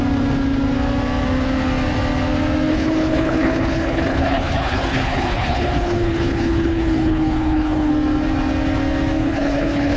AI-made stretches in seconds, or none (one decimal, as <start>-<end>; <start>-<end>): 2.7-7.9; 9.2-10.0